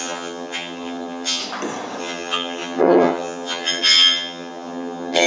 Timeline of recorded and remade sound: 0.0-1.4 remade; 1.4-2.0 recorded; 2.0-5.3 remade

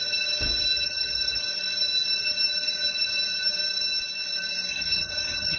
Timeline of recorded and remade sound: 0.0-0.7 recorded; 0.7-1.4 remade; 1.4-4.7 recorded; 4.7-5.6 remade

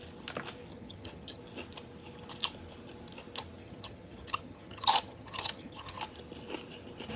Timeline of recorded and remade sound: 0.0-0.7 recorded; 0.7-1.4 remade; 1.4-3.6 recorded; 3.6-6.0 remade; 6.0-7.2 recorded

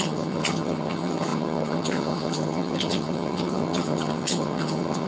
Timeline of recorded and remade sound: 0.0-5.1 remade

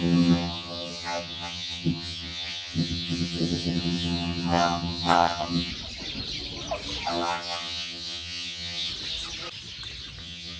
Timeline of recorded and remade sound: 0.0-5.7 remade; 5.7-7.1 recorded; 7.1-8.9 remade; 8.9-10.2 recorded; 10.2-10.6 remade

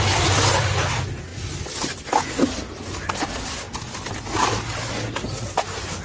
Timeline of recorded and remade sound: 0.0-6.0 recorded